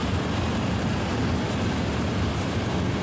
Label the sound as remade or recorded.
recorded